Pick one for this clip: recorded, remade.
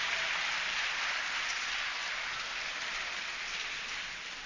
remade